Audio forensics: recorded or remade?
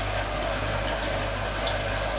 recorded